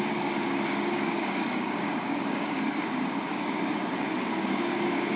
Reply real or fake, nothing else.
fake